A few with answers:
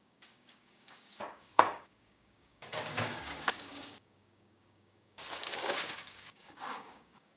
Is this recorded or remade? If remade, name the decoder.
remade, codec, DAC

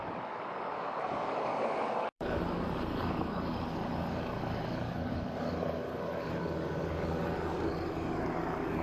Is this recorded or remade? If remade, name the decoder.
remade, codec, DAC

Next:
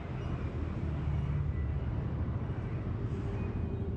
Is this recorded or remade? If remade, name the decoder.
recorded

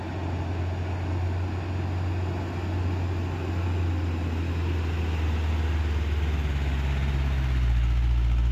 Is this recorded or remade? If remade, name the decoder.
recorded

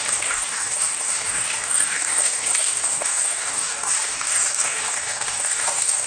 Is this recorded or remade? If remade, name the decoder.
remade, codec, DAC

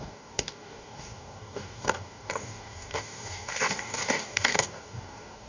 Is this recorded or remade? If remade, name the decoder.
remade, codec, DAC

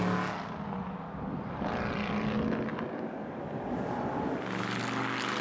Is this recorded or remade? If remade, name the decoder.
recorded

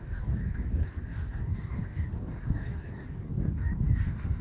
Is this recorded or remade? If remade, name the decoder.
remade, codec, DAC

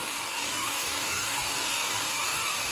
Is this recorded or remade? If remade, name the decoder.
remade, codec, DAC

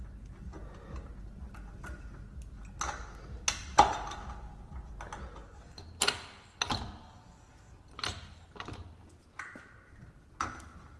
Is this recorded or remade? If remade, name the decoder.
recorded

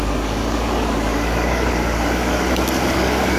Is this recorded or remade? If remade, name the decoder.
remade, codec, DAC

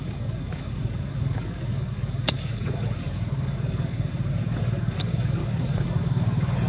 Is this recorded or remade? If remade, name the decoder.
remade, codec, DAC